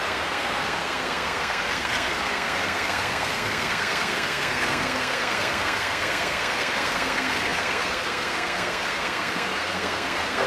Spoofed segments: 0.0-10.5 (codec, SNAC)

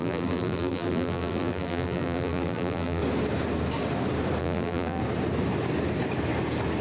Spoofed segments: 0.0-3.0 (vocoder, BigVGAN v2); 4.4-5.0

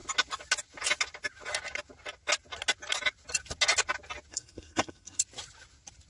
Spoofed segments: 4.3-5.2 (codec, SNAC)